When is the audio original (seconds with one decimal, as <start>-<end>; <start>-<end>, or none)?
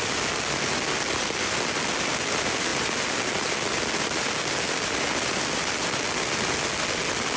0.0-7.4